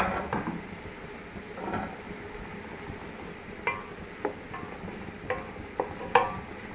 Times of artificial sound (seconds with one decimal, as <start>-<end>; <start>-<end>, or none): none